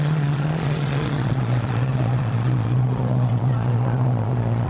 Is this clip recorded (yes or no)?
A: no